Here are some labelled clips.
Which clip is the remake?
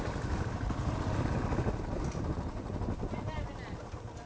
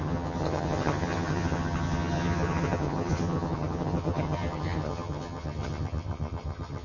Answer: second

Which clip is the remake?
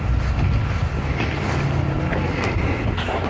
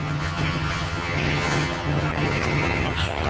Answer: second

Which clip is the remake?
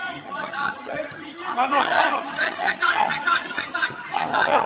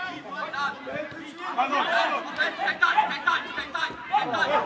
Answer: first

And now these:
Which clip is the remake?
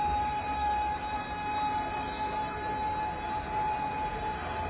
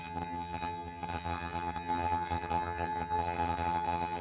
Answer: second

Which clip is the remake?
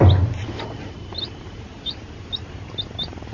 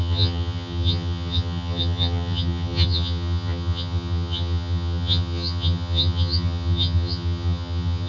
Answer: second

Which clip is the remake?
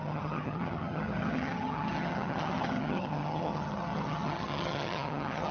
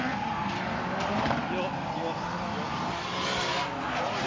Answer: first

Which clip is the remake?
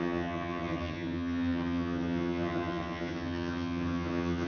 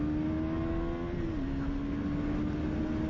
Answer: first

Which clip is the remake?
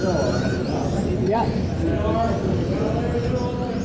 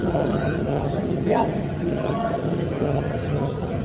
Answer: second